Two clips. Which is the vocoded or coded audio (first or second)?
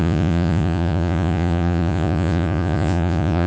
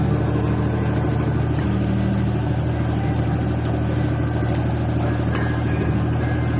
first